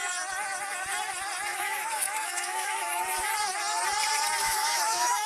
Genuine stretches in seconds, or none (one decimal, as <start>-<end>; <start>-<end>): 0.0-1.5; 3.0-4.4